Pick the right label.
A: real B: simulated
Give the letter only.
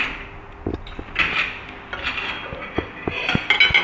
A